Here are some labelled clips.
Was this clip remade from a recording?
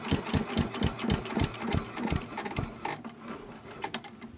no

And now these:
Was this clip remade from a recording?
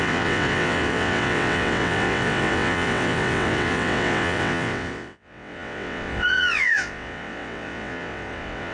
yes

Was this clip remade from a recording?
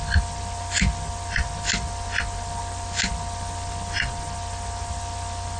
no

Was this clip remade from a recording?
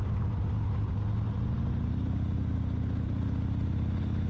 no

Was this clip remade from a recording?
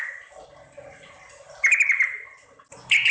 no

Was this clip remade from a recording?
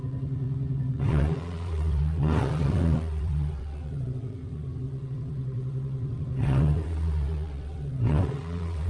yes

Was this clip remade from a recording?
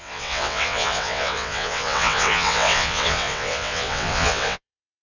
yes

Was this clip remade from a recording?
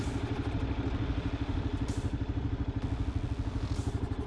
no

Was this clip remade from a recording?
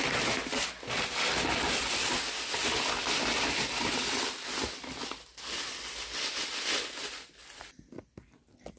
no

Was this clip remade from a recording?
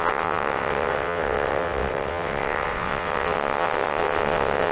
yes